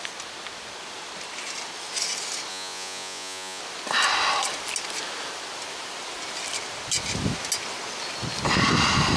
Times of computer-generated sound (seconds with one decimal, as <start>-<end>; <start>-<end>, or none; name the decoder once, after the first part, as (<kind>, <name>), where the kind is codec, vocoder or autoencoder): 2.5-3.6 (vocoder, Vocos)